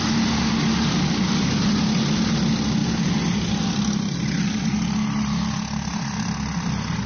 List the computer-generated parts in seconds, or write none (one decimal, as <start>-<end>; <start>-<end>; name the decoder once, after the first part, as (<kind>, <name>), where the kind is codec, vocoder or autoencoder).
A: none